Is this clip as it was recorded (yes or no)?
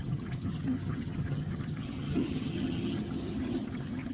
no